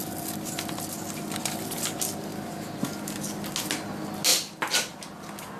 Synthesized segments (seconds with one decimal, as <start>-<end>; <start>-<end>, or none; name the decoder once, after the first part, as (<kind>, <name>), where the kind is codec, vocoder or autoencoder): none

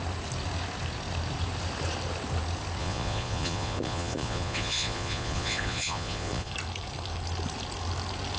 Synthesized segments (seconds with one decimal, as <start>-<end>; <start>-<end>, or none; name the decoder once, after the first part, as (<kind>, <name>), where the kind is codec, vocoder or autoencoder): 2.8-6.5 (vocoder, Vocos)

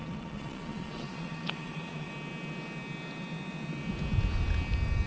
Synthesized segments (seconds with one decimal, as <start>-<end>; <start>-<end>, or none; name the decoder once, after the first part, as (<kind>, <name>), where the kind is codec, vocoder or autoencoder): 0.0-2.1 (vocoder, Vocos)

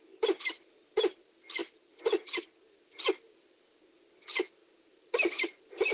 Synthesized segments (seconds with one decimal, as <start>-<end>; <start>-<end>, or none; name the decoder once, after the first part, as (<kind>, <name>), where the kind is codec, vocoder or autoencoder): none

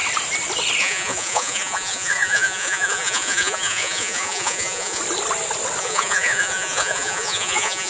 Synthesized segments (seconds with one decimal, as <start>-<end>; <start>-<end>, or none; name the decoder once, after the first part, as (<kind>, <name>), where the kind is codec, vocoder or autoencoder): 0.8-5.0 (vocoder, Vocos); 5.8-7.9

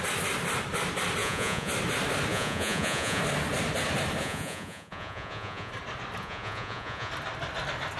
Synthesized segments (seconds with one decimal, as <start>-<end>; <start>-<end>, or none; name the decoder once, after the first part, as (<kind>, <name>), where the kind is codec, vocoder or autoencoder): 1.2-1.7 (vocoder, Vocos); 2.3-3.2; 4.2-5.7; 6.2-7.1

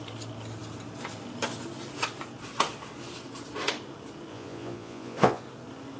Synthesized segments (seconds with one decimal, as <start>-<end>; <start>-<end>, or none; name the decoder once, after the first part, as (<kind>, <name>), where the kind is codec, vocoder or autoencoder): 4.3-5.4 (vocoder, Vocos)

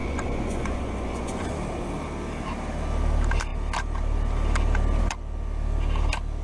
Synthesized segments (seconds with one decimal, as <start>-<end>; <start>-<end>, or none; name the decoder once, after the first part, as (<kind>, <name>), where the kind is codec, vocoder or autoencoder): 0.0-1.5 (vocoder, Vocos)